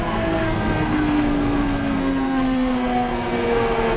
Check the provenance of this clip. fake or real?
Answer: fake